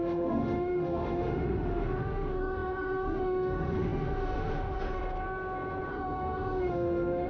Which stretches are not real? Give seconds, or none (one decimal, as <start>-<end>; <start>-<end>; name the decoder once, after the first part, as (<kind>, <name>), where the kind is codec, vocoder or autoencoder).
0.0-5.0 (autoencoder, DAC-VAE); 5.9-7.3